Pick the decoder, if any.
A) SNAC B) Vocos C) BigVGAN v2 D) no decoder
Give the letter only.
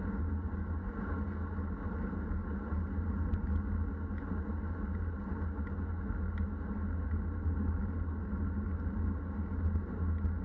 D